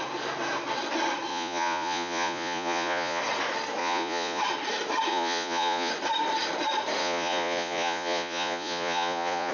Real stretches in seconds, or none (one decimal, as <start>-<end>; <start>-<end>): 0.0-1.3; 3.2-3.8; 4.4-5.1; 5.9-7.0